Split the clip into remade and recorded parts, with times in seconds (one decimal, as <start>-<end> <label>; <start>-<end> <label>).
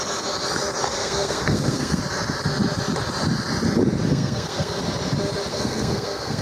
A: 0.0-1.0 recorded; 1.0-2.0 remade; 2.0-4.1 recorded; 4.1-4.8 remade; 4.8-5.5 recorded; 5.5-6.4 remade